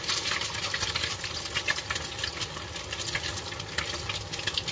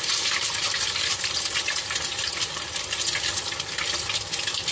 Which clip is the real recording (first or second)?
first